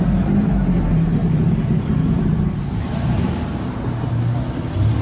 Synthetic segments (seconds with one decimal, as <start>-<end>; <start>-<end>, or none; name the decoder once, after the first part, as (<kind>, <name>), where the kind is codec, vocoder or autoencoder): 1.2-4.1 (vocoder, BigVGAN v2)